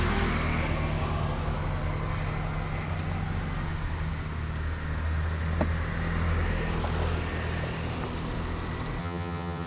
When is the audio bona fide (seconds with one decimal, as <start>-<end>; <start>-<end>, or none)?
0.0-9.0

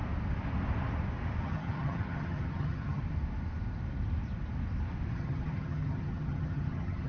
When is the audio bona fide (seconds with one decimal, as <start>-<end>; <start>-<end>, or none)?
0.0-1.4; 3.0-5.1

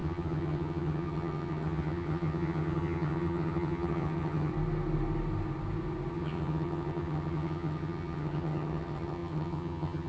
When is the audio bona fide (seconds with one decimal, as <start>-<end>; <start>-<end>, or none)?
4.5-6.1

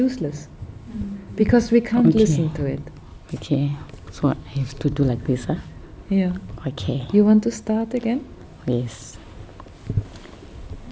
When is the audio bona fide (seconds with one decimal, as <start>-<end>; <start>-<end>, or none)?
0.0-10.9

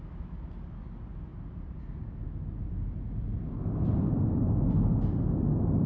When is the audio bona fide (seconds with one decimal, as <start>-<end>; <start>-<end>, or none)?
0.0-5.9

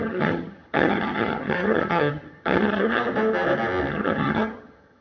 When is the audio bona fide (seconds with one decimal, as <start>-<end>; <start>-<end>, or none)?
3.0-3.9

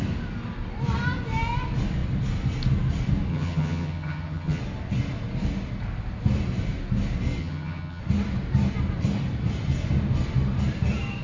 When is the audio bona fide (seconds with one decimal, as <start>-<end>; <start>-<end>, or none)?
0.0-3.3; 4.6-7.4; 8.0-11.2